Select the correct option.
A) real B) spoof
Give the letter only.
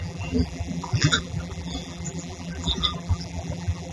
B